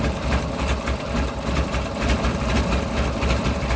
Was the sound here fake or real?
real